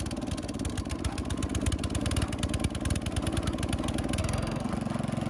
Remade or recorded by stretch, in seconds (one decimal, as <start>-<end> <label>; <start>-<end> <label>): 0.0-4.2 recorded; 4.2-4.7 remade; 4.7-5.3 recorded